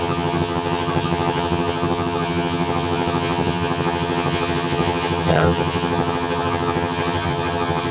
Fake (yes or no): yes